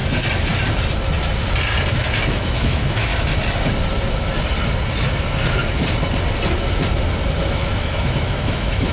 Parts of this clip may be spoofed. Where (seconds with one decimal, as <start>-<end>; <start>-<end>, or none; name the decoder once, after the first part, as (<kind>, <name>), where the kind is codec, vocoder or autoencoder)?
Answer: 1.9-3.1 (autoencoder, DAC-VAE); 7.4-8.9